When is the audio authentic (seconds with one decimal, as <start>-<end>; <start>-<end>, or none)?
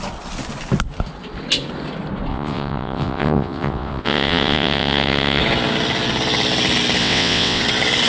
0.0-2.3; 5.4-7.0; 7.6-8.1